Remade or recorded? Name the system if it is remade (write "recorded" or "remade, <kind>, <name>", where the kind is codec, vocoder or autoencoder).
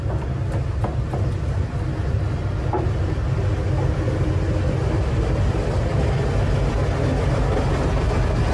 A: recorded